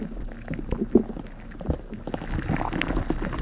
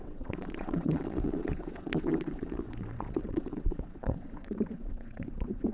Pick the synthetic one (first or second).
second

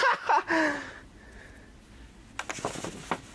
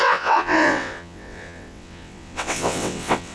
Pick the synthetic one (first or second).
second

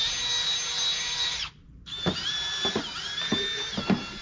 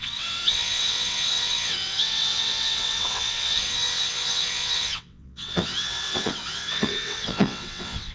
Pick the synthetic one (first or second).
second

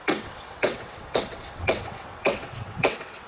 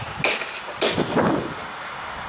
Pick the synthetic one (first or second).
first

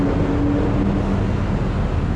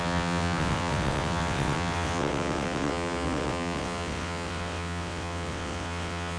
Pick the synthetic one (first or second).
second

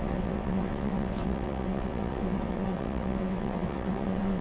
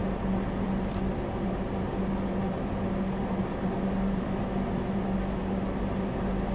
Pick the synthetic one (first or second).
first